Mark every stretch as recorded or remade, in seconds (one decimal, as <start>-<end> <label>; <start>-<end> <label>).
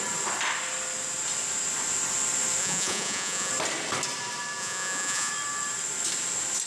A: 0.0-2.6 recorded; 2.6-3.5 remade; 3.5-4.6 recorded; 4.6-5.3 remade; 5.3-6.7 recorded